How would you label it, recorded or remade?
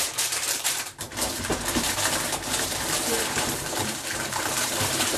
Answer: remade